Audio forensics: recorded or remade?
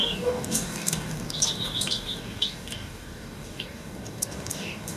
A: remade